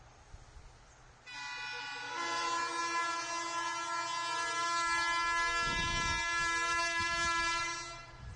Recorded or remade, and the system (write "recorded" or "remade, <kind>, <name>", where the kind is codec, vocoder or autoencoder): recorded